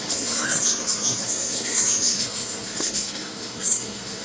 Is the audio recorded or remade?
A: remade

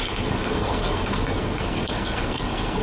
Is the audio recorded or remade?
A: remade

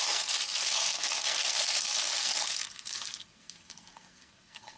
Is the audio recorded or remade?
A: remade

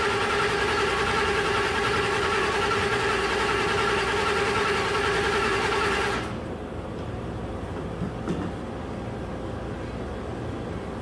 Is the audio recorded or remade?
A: recorded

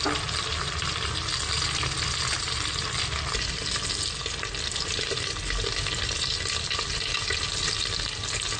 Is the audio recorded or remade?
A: recorded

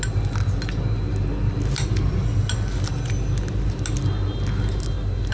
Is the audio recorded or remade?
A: recorded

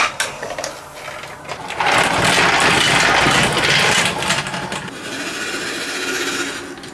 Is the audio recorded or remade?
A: recorded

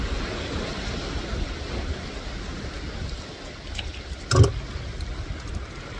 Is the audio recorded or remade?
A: recorded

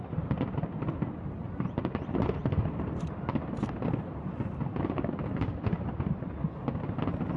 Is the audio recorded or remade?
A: recorded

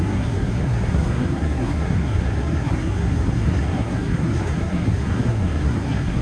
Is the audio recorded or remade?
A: remade